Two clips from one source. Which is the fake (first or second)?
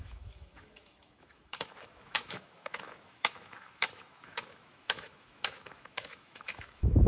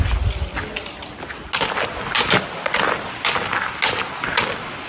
first